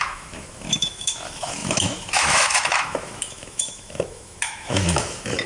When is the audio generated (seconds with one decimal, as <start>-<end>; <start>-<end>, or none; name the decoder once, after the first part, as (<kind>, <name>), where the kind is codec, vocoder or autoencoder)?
0.0-5.5 (autoencoder, DAC-VAE)